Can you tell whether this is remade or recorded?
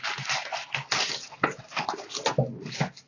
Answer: recorded